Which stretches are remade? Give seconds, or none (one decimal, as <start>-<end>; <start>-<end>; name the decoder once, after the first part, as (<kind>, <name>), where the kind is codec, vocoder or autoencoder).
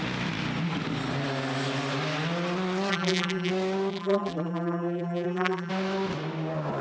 2.9-3.5 (vocoder, BigVGAN v2); 3.9-5.7